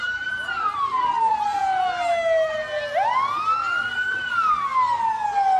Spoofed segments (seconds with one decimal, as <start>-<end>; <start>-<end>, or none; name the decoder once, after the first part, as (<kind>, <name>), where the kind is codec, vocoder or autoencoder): none